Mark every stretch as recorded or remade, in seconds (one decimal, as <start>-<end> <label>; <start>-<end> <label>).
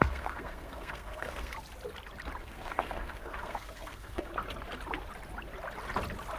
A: 0.0-1.5 remade; 1.5-2.4 recorded; 2.4-4.3 remade; 4.3-6.4 recorded